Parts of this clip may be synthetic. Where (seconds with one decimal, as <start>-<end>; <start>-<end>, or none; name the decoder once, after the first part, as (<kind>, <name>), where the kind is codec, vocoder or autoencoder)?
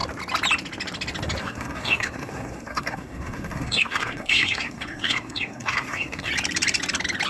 1.4-6.3 (codec, SNAC)